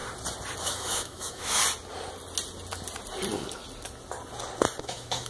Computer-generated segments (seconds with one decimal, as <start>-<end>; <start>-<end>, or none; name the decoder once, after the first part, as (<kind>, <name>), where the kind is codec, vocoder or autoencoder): 0.6-1.6 (autoencoder, DAC-VAE); 4.8-5.3